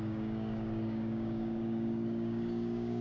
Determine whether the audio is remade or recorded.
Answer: remade